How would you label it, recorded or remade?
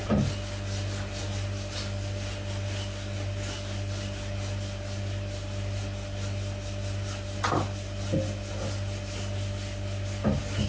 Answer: recorded